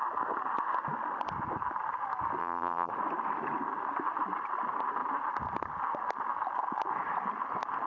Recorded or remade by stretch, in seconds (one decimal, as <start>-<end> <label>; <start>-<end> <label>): 0.0-2.4 recorded; 2.4-2.9 remade; 2.9-7.9 recorded